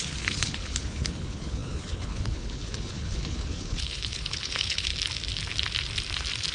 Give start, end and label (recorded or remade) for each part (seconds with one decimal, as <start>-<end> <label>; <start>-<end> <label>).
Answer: 0.0-4.9 remade; 4.9-6.5 recorded